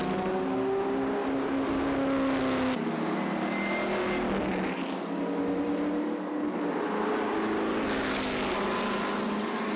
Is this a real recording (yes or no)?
yes